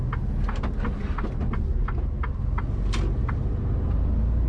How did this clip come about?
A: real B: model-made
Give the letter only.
A